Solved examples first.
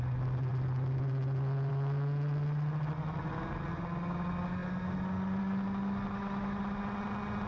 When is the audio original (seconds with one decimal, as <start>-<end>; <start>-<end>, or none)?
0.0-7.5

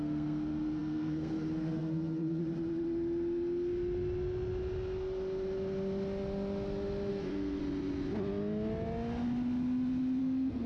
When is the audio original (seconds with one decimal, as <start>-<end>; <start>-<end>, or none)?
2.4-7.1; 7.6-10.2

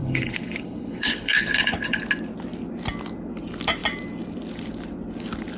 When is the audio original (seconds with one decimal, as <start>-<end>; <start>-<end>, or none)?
2.0-5.6

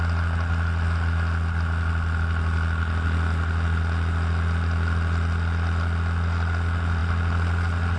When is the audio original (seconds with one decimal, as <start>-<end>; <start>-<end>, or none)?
0.0-8.0

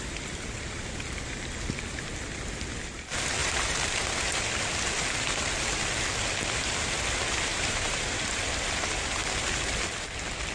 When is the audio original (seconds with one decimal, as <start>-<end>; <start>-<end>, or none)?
0.0-3.4; 4.1-7.5; 8.2-10.5

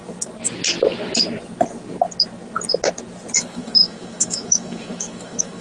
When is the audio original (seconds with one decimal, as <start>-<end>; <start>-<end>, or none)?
0.0-3.4